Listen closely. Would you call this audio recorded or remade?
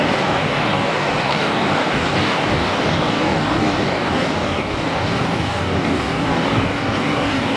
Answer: remade